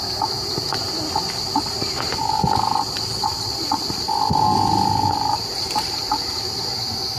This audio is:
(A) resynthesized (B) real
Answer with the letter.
B